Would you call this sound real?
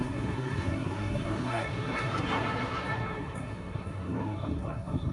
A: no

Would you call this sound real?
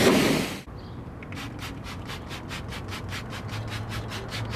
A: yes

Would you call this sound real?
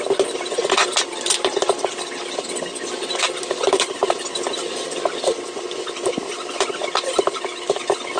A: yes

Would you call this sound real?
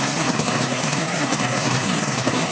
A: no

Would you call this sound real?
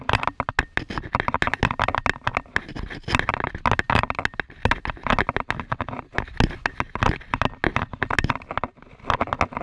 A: yes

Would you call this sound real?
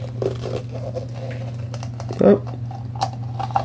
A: yes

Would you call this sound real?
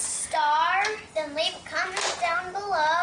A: yes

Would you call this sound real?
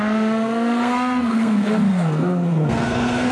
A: no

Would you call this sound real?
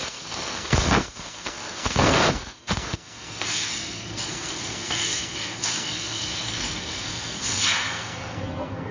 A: no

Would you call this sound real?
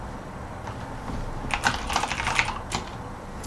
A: yes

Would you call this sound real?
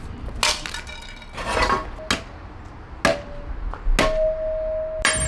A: yes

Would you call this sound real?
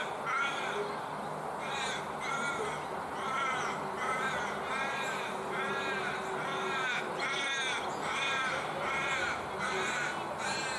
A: yes